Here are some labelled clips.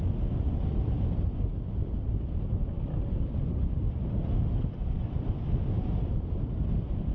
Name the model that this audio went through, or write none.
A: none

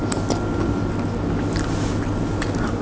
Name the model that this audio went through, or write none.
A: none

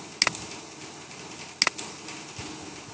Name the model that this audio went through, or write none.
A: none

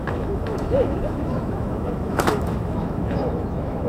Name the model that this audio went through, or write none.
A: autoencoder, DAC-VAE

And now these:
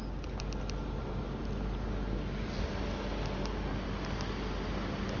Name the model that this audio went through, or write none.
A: none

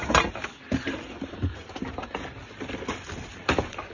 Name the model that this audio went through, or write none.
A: none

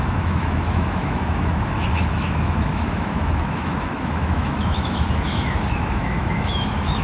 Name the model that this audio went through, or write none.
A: autoencoder, DAC-VAE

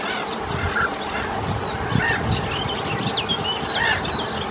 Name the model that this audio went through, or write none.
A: none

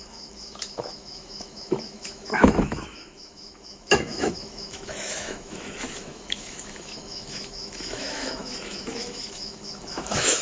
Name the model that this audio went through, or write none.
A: autoencoder, DAC-VAE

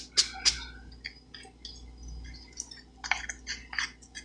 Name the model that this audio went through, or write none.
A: none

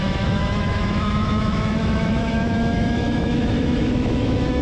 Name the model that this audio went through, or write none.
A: autoencoder, DAC-VAE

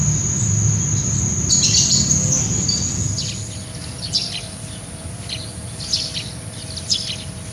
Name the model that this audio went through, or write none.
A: none